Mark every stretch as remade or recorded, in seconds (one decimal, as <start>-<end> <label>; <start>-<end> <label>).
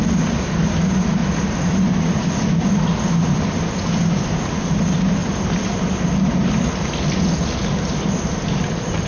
0.0-9.1 recorded